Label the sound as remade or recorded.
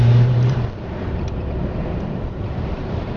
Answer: remade